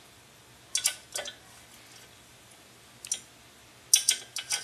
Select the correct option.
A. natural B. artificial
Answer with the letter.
A